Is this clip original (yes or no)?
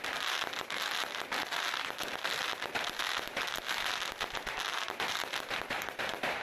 yes